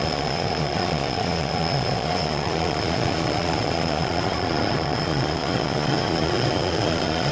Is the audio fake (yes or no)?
yes